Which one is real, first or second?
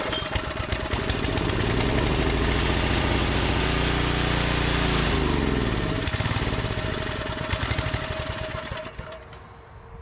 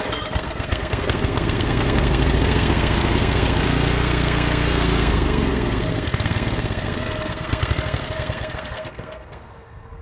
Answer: first